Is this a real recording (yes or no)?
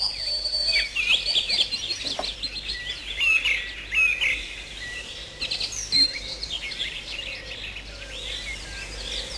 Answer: yes